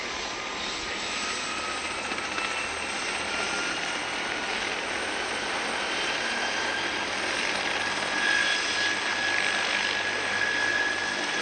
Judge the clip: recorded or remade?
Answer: recorded